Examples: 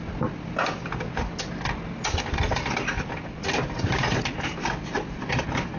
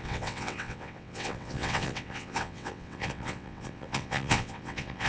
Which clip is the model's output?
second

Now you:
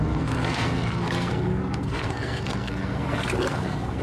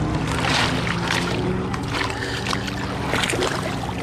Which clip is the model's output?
first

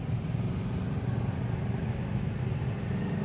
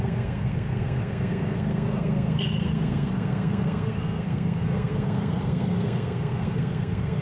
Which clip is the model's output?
second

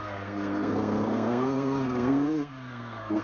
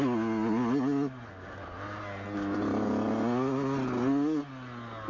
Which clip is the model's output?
first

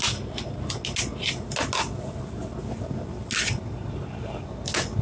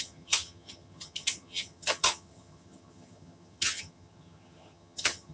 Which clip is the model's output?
second